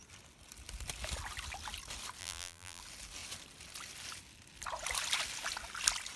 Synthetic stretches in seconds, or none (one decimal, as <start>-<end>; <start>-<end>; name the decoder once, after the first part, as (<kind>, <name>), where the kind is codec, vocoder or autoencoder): 2.2-2.8 (vocoder, BigVGAN v2)

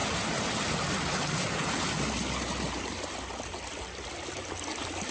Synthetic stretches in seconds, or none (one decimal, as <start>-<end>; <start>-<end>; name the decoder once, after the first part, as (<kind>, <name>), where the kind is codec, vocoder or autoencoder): none

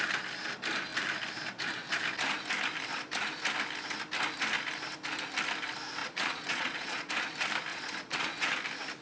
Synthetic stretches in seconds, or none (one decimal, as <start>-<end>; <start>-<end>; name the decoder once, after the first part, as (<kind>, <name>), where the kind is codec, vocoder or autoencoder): 6.0-7.1 (vocoder, Vocos); 7.7-8.5

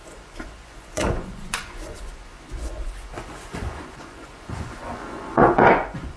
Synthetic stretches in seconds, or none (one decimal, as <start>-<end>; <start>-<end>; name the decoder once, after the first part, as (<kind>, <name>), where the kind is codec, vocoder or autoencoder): 0.0-6.2 (vocoder, Vocos)

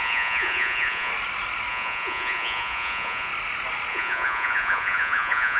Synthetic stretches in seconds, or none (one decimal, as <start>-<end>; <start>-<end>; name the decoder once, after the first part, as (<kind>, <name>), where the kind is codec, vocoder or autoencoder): 0.0-1.1 (vocoder, Vocos); 1.7-3.3; 3.9-5.6

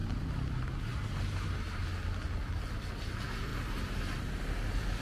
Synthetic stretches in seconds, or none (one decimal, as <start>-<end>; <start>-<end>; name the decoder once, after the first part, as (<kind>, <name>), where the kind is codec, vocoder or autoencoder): 0.0-1.8 (vocoder, BigVGAN v2)